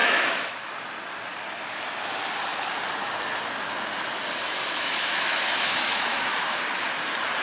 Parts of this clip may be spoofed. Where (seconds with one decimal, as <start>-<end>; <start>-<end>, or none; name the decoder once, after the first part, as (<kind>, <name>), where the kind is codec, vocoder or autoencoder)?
0.0-0.7 (autoencoder, DAC-VAE); 4.4-6.6